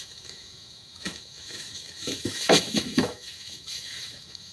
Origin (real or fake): fake